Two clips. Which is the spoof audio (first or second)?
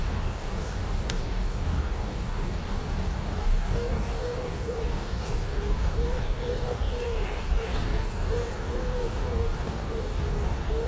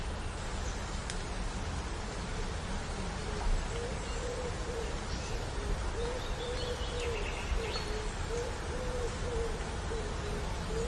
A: first